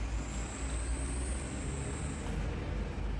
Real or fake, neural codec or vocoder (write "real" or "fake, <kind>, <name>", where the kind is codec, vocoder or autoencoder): real